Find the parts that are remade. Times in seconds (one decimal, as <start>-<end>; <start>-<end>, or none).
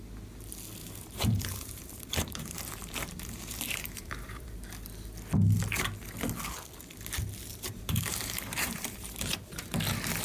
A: 0.8-4.4; 7.5-9.6